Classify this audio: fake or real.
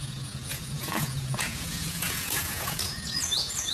fake